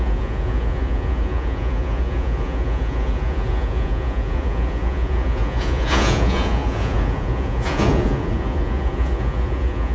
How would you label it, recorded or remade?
remade